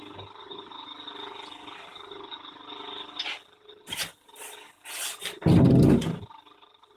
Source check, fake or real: real